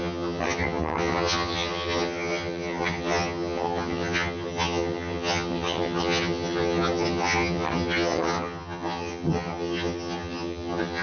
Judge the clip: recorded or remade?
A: remade